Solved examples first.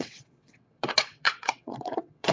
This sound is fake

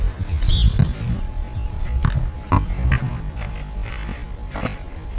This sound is real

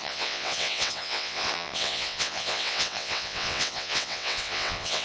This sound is fake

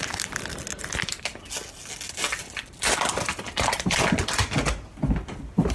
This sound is real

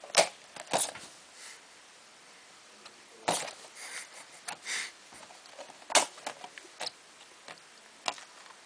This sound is real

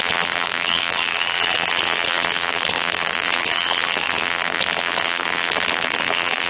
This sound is fake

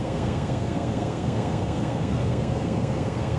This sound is fake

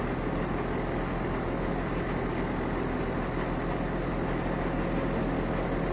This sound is real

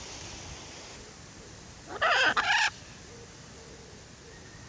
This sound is real